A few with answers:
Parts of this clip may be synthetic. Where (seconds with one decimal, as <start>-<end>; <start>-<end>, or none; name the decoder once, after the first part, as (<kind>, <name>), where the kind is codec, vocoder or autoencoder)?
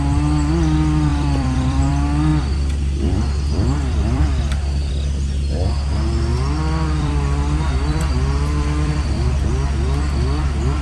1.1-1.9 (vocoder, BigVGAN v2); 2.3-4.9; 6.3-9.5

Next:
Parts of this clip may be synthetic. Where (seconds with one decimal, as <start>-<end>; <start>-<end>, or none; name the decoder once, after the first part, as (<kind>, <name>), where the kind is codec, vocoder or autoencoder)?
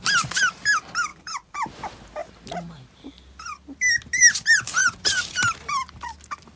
2.2-3.2 (vocoder, BigVGAN v2); 4.8-5.7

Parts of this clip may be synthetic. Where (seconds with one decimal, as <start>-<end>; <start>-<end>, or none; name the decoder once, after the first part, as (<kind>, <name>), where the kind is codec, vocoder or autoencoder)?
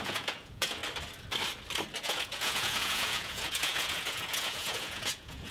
0.0-0.8 (vocoder, Vocos); 2.0-5.5